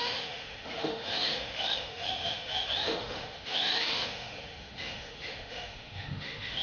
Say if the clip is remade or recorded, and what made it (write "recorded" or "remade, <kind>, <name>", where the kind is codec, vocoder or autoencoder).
remade, autoencoder, DAC-VAE